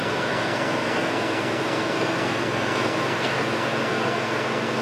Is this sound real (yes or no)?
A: no